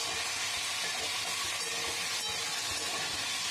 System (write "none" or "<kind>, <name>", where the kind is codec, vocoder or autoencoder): none